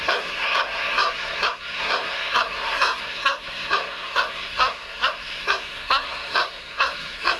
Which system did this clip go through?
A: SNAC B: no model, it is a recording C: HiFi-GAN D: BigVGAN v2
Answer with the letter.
A